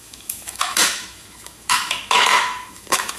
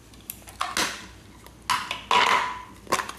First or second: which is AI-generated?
first